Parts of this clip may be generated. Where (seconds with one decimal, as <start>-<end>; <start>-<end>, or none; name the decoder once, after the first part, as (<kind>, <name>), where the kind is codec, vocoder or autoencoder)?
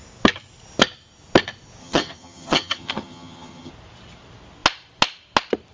1.8-3.7 (vocoder, HiFi-GAN)